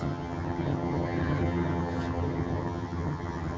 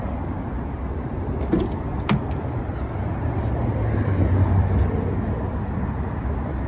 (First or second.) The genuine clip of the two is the second